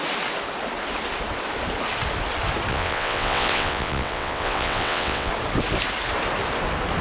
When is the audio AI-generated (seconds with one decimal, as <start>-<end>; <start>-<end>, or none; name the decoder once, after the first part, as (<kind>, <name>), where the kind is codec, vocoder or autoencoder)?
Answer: 2.7-5.3 (vocoder, WaveNeXt)